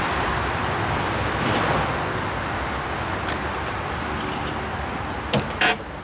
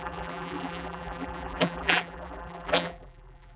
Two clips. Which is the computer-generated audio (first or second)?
second